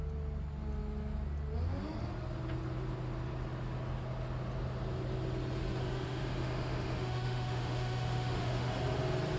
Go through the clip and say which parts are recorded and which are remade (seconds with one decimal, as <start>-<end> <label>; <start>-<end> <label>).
0.0-5.8 recorded; 5.8-8.7 remade; 8.7-9.4 recorded